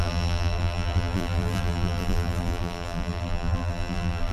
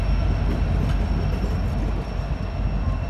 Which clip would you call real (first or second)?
second